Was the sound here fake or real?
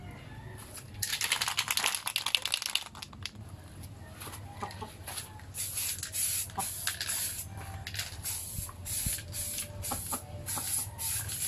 real